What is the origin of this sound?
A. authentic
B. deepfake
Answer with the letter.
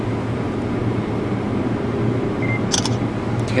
A